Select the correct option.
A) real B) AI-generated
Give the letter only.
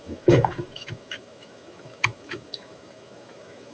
B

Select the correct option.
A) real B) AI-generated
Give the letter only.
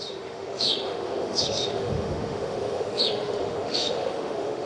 B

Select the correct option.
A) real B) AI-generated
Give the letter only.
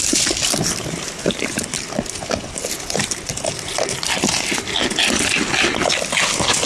A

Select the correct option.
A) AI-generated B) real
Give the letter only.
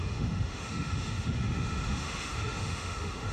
A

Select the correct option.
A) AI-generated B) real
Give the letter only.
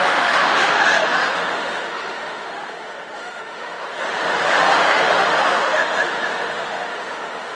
A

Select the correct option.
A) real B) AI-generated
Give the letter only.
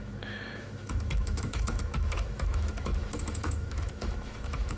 B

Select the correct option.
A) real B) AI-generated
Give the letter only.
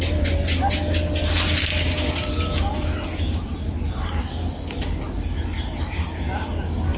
A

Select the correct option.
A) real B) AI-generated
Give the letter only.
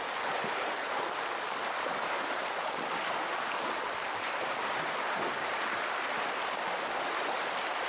A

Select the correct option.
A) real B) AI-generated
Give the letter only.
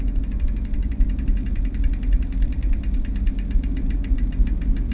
A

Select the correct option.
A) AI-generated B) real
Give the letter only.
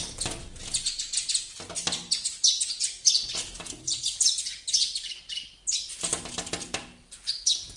B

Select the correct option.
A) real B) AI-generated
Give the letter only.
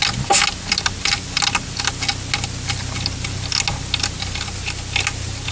A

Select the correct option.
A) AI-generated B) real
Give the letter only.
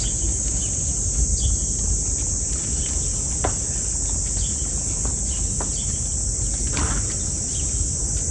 B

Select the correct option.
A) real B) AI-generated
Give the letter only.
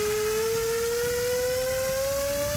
A